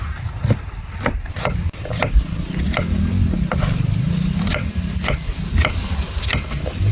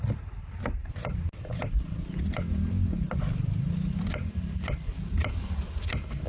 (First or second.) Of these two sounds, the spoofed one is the first